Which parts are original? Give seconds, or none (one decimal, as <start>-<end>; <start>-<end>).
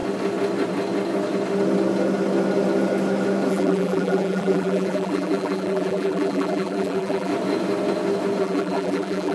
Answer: 0.0-3.5; 7.3-8.4